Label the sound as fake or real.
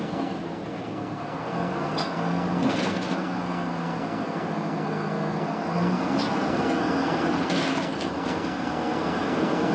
fake